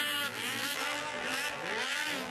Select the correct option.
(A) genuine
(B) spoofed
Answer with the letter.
B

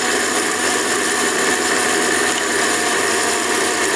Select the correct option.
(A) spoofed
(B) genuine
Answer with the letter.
A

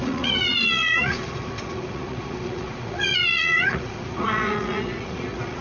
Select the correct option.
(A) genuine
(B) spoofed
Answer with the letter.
B